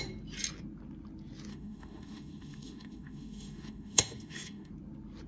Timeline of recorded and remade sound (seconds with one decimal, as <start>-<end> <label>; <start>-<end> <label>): 0.0-1.5 recorded; 1.5-4.7 remade; 4.7-5.3 recorded